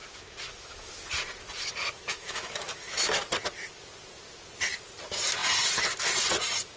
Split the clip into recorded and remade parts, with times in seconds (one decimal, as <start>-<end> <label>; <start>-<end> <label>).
0.0-0.9 remade; 0.9-2.1 recorded; 2.1-3.1 remade; 3.1-6.8 recorded